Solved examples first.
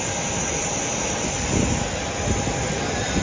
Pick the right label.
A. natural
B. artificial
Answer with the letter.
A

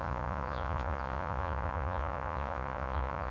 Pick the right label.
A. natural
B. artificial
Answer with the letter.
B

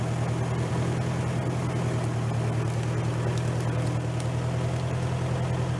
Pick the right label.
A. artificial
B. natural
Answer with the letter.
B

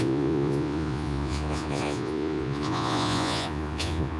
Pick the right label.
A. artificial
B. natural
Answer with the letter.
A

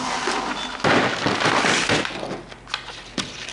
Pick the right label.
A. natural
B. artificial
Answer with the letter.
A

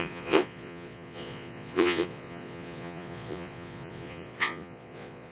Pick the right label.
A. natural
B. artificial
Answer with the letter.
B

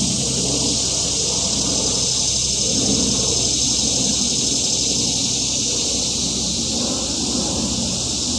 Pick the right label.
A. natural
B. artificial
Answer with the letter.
A